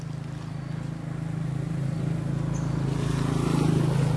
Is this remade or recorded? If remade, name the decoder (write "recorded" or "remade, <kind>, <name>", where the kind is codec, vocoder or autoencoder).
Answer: recorded